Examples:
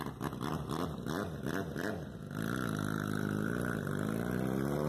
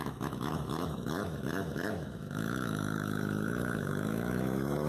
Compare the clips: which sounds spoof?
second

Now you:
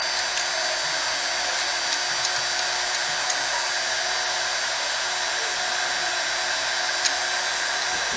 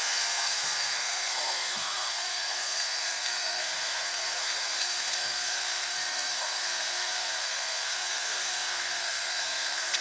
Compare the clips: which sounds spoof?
second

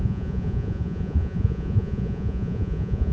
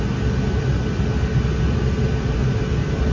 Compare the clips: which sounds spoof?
first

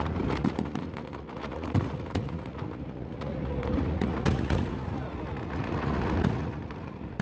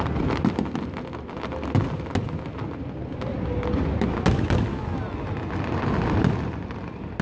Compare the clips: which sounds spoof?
first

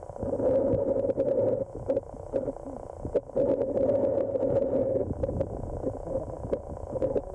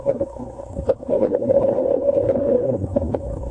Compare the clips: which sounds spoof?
second